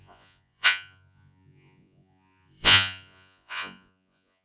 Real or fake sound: fake